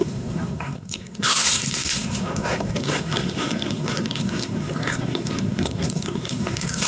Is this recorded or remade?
remade